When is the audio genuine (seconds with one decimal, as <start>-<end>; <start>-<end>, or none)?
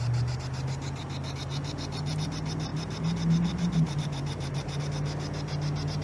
0.0-1.4; 2.3-2.7; 4.8-6.0